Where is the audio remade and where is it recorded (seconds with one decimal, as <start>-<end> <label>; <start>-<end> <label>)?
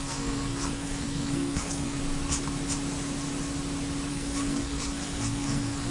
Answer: 0.0-2.0 remade; 2.0-4.1 recorded; 4.1-5.9 remade